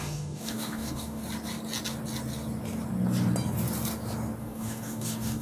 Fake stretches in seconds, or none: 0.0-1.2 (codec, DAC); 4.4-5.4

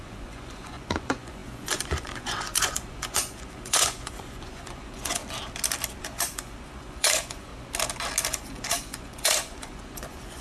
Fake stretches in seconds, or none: 0.0-5.2 (vocoder, Vocos); 6.0-7.5; 8.3-10.4

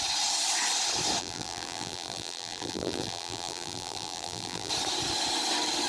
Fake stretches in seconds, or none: 1.2-4.7 (vocoder, BigVGAN v2)